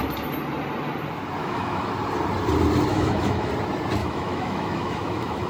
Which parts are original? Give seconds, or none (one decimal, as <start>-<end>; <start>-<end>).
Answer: 0.0-1.4; 1.9-2.9; 3.5-4.0

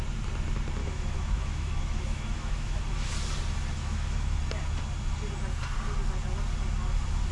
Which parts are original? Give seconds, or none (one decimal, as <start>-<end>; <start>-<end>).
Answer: 0.0-0.8; 2.8-3.8; 4.4-7.3

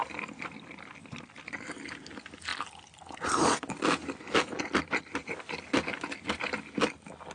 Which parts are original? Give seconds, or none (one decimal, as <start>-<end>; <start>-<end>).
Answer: 0.0-7.3

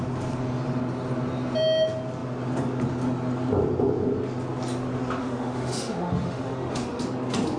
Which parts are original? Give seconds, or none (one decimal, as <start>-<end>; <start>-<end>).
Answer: 0.0-5.2; 7.0-7.6

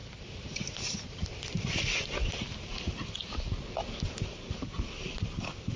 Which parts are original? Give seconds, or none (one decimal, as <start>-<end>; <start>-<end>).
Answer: 0.0-5.8

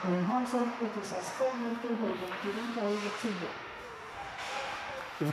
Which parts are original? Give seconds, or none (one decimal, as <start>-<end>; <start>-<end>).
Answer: none